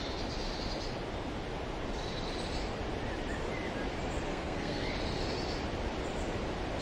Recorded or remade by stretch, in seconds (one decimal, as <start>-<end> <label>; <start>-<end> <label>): 0.0-4.3 recorded; 4.3-4.9 remade; 4.9-6.8 recorded